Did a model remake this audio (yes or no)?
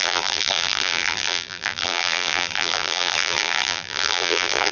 yes